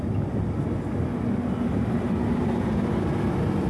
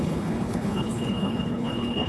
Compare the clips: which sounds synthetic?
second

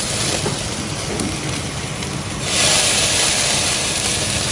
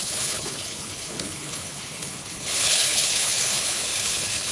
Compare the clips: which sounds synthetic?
second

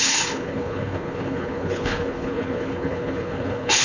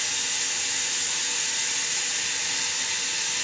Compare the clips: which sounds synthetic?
first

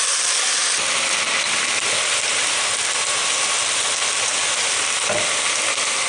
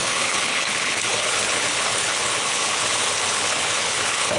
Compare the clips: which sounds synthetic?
second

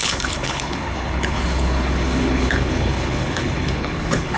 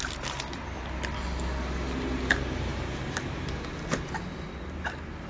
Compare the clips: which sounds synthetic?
first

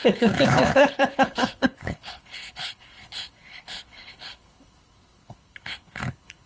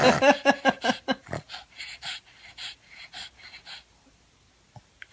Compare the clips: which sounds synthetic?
first